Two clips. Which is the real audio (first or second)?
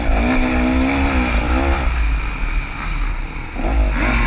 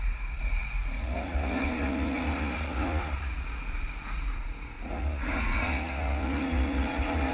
first